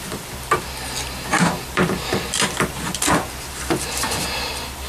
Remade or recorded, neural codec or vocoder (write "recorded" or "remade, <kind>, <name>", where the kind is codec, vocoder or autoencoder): recorded